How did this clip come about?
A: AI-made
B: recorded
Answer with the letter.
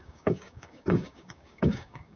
A